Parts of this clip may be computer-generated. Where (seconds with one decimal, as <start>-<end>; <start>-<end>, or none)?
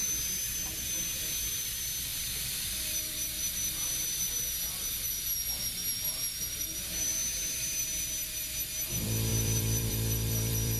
0.0-5.8; 6.4-7.2; 8.9-10.8